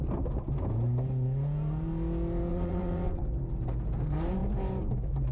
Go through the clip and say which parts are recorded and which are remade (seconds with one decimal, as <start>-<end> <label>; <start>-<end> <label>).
0.0-2.5 recorded; 2.5-3.2 remade; 3.2-5.3 recorded